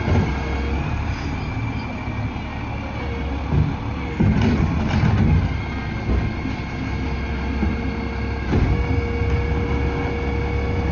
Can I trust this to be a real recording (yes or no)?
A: yes